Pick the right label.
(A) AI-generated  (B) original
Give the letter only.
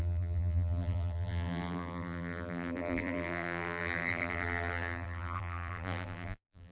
A